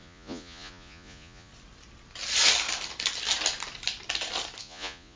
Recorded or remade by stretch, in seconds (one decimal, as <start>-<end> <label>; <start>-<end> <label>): 0.0-1.5 remade; 1.5-4.6 recorded; 4.6-5.2 remade